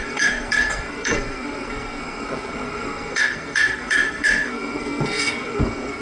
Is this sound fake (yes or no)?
yes